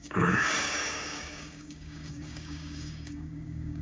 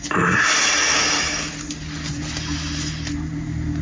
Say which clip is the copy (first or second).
first